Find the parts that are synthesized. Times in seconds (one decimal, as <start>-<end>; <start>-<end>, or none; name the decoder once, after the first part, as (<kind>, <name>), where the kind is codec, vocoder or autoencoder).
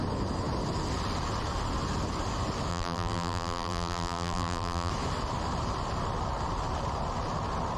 2.7-4.9 (vocoder, BigVGAN v2)